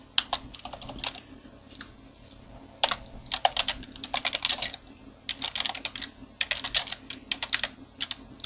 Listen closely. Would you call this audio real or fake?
real